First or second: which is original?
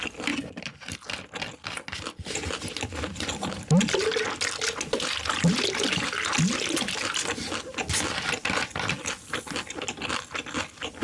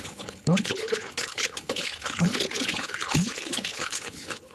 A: first